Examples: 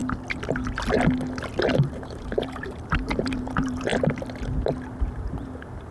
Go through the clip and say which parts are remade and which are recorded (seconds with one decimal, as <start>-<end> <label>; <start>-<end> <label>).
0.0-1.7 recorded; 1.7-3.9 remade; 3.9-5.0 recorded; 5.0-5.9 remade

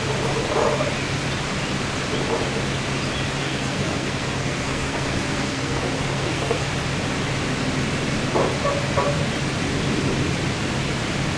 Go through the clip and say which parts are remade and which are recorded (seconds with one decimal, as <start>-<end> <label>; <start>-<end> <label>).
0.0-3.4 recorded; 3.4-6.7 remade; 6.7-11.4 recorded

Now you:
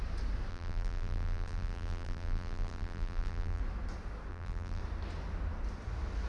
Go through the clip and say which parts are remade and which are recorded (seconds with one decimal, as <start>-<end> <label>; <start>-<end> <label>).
0.0-0.5 recorded; 0.5-3.6 remade; 3.6-4.3 recorded; 4.3-4.8 remade; 4.8-6.3 recorded

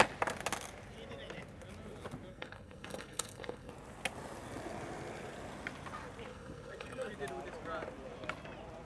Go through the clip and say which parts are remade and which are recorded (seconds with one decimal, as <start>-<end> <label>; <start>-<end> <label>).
0.0-2.3 recorded; 2.3-3.7 remade; 3.7-6.3 recorded; 6.3-7.1 remade; 7.1-8.8 recorded

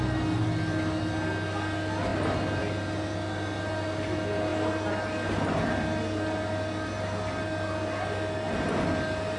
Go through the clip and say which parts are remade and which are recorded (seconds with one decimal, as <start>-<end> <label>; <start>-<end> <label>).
0.0-9.4 recorded

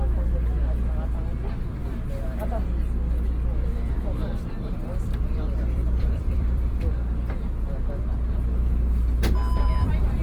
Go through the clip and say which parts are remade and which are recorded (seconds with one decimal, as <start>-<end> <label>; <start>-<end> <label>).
0.0-4.2 recorded; 4.2-6.8 remade; 6.8-10.2 recorded

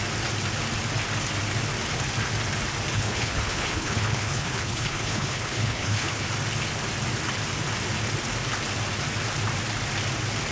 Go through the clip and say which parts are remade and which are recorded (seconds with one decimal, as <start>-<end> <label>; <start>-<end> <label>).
0.0-2.9 recorded; 2.9-6.2 remade; 6.2-10.5 recorded